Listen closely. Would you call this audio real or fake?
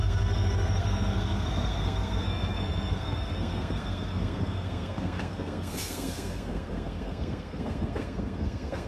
fake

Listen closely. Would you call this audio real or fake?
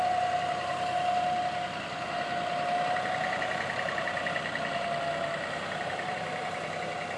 real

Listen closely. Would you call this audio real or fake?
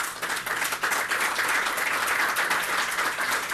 real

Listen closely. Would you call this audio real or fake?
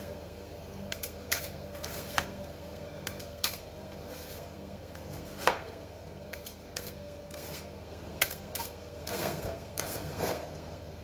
fake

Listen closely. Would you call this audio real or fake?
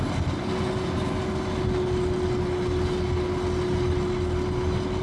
real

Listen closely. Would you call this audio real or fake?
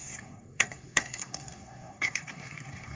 fake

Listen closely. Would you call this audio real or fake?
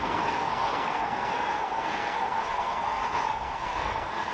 fake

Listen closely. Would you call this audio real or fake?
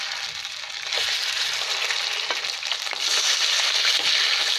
real